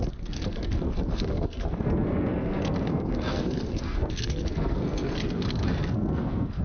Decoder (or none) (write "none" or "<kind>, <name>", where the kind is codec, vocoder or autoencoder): codec, SNAC